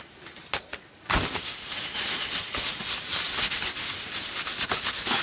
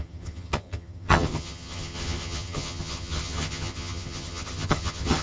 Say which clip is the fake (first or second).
second